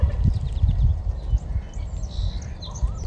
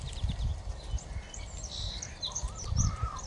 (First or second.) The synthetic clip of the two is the second